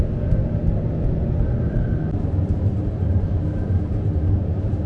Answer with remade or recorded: recorded